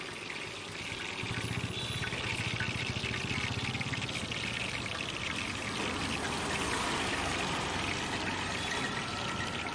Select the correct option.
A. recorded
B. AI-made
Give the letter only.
A